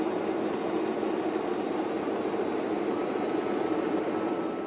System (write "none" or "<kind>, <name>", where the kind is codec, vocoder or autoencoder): none